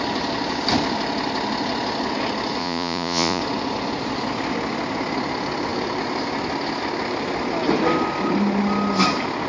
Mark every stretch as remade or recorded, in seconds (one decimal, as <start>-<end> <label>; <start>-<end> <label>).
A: 0.0-2.6 recorded; 2.6-3.4 remade; 3.4-9.5 recorded